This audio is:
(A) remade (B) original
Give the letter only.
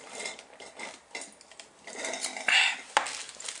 B